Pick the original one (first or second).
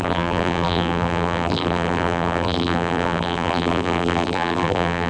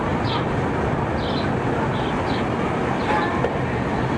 second